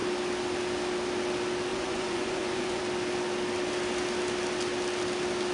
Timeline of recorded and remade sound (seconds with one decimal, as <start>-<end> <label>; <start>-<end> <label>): 0.0-1.7 recorded; 1.7-2.8 remade; 2.8-5.5 recorded